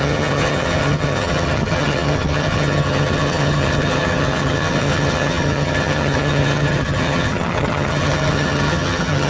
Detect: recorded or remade remade